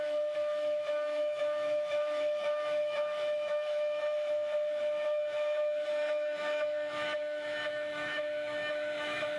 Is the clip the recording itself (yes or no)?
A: no